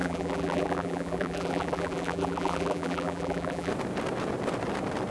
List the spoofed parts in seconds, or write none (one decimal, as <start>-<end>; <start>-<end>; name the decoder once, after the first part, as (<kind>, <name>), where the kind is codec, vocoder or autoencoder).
0.0-3.7 (vocoder, BigVGAN v2)